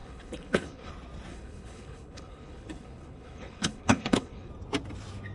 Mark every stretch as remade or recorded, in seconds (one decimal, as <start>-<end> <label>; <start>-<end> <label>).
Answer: 0.0-0.9 remade; 0.9-1.3 recorded; 1.3-4.5 remade; 4.5-5.3 recorded